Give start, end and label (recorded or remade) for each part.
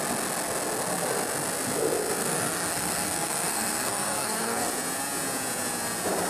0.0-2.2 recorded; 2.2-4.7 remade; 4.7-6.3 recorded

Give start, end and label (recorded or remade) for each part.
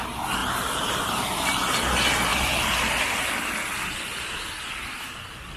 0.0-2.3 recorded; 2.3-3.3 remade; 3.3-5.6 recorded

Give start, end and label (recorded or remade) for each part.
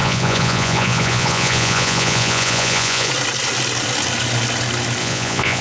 0.0-3.1 remade; 3.1-5.0 recorded; 5.0-5.6 remade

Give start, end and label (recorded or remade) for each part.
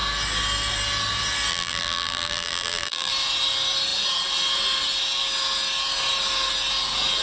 0.0-1.5 recorded; 1.5-3.1 remade; 3.1-7.2 recorded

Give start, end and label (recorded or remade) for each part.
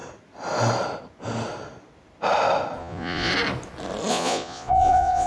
0.0-2.8 recorded; 2.8-3.3 remade; 3.3-4.1 recorded; 4.1-5.3 remade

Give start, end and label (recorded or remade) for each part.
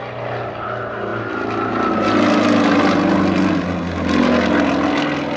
0.0-5.4 recorded